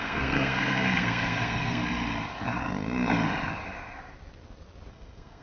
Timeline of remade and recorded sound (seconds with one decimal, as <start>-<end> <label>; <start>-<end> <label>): 0.0-1.8 remade; 1.8-4.9 recorded; 4.9-5.4 remade

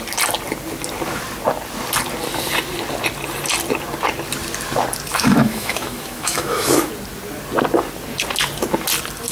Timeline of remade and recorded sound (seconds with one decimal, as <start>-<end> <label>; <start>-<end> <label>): 0.0-5.1 recorded; 5.1-6.9 remade; 6.9-9.3 recorded

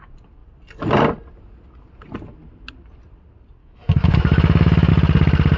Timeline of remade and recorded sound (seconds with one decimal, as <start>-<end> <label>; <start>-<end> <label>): 0.0-3.6 recorded; 3.6-4.9 remade; 4.9-5.6 recorded

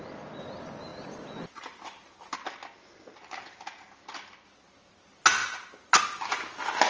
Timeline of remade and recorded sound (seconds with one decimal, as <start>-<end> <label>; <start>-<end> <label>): 0.0-6.9 recorded

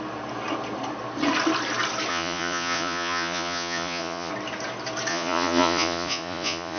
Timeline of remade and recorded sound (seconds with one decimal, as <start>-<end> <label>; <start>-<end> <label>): 0.0-2.1 recorded; 2.1-4.3 remade; 4.3-5.1 recorded; 5.1-6.8 remade

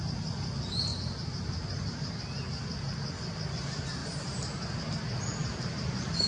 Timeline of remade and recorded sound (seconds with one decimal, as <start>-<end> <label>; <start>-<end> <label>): 0.0-0.9 recorded; 0.9-2.1 remade; 2.1-4.0 recorded; 4.0-4.9 remade; 4.9-5.4 recorded; 5.4-6.3 remade

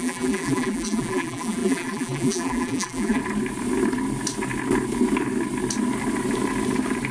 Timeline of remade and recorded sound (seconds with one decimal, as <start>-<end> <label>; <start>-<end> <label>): 0.0-3.2 remade; 3.2-7.1 recorded

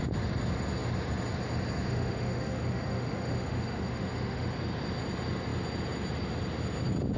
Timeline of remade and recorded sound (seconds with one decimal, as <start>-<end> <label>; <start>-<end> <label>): 0.0-1.9 recorded; 1.9-4.5 remade; 4.5-7.2 recorded